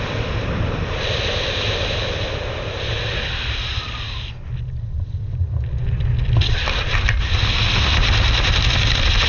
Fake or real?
real